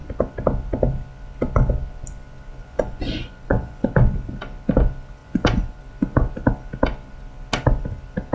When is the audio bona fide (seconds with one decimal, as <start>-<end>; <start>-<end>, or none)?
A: 0.0-2.6; 3.9-5.2; 5.8-8.3